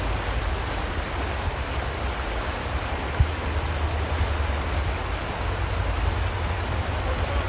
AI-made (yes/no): no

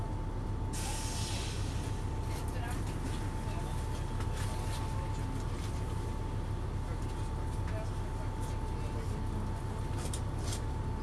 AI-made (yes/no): no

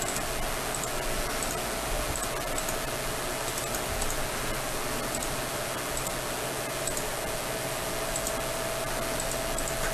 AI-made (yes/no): no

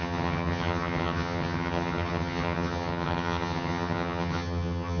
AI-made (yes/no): yes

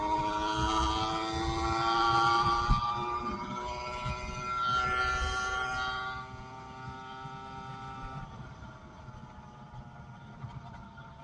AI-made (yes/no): no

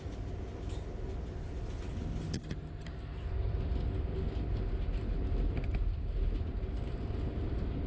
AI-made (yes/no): no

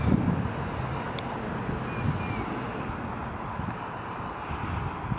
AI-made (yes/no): no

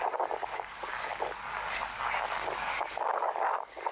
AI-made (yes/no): yes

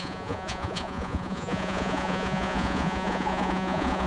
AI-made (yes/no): yes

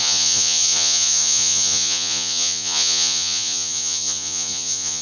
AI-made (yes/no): yes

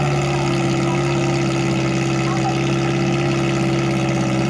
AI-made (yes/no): no